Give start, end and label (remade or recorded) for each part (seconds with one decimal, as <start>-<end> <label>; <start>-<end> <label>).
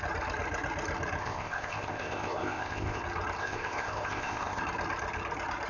0.0-1.2 recorded; 1.2-3.0 remade; 3.0-3.4 recorded; 3.4-4.6 remade; 4.6-5.7 recorded